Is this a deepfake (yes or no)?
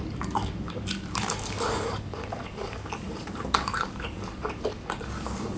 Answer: yes